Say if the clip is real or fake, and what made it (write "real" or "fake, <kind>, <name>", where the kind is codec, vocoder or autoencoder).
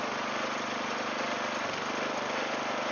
real